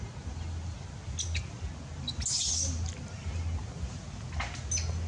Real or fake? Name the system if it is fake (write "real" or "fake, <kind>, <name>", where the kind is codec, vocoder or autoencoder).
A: real